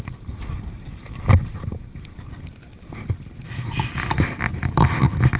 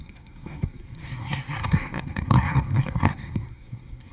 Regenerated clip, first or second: second